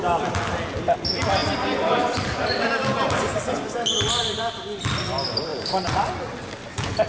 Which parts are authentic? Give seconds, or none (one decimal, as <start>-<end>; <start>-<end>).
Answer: 0.0-1.4; 4.3-5.5; 6.1-7.1